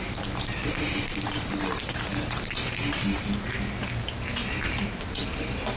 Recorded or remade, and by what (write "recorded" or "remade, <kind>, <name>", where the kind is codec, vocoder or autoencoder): recorded